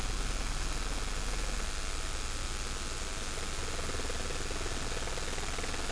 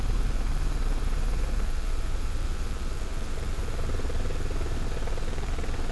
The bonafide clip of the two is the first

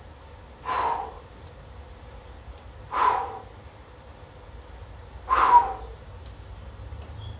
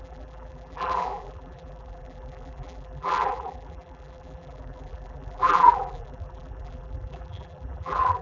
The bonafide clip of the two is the first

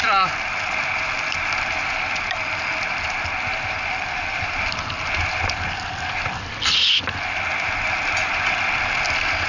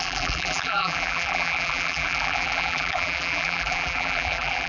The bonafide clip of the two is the first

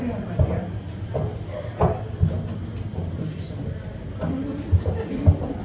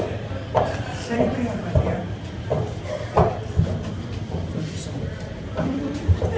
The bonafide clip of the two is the first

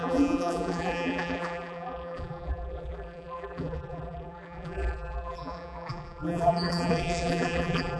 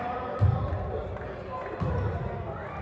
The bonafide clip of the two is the second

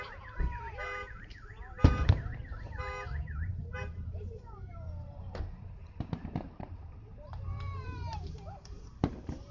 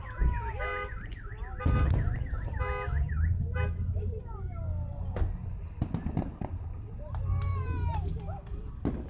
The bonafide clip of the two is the second